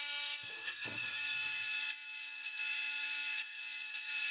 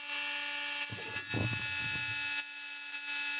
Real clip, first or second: second